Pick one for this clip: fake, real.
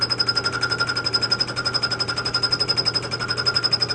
real